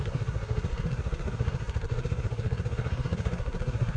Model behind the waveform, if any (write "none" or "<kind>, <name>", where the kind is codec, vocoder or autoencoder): codec, SNAC